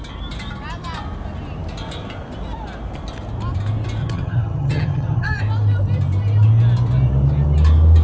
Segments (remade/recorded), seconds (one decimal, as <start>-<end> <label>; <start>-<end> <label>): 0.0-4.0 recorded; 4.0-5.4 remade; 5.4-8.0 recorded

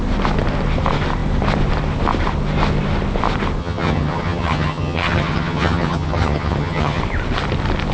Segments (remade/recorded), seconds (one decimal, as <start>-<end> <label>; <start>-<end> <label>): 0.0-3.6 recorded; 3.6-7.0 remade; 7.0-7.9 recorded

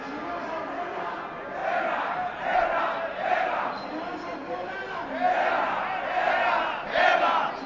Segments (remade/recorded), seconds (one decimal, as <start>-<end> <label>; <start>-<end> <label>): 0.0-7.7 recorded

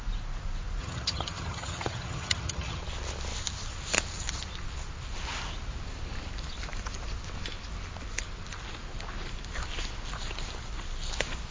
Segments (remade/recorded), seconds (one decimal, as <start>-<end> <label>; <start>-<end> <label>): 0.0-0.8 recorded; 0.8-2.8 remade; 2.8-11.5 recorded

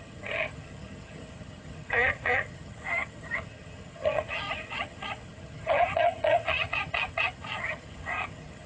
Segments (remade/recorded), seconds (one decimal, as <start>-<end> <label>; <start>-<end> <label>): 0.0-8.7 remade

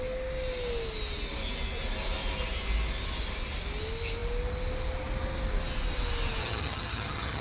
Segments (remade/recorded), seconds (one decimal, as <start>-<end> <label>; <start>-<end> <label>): 0.0-6.4 recorded; 6.4-7.4 remade